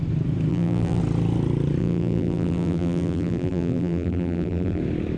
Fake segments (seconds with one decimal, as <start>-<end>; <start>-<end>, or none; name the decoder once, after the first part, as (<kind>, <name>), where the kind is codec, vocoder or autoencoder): 0.5-1.0 (vocoder, BigVGAN v2); 1.8-4.8